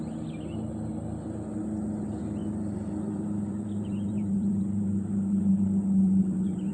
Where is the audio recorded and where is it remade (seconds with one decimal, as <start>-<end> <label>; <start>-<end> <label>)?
0.0-2.4 recorded; 2.4-6.7 remade